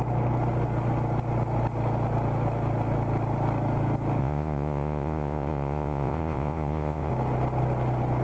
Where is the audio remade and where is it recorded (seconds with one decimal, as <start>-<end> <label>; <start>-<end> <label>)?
0.0-4.2 recorded; 4.2-7.1 remade; 7.1-8.2 recorded